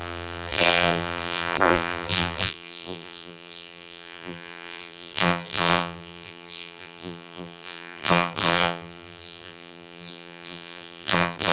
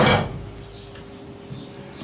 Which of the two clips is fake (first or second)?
first